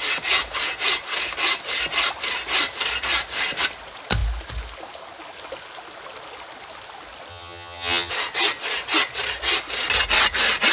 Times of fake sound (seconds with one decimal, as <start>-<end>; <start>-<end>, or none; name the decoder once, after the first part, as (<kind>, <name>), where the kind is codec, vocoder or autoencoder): 7.3-8.1 (vocoder, HiFi-GAN)